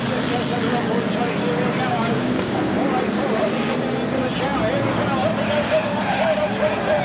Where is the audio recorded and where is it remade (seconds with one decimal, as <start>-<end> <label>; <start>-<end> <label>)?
0.0-1.9 recorded; 1.9-2.8 remade; 2.8-7.0 recorded